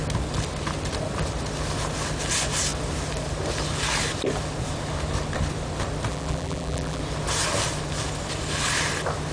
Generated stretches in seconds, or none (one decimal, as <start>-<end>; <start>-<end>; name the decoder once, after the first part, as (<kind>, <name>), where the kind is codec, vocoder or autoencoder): 6.1-7.0 (vocoder, BigVGAN v2)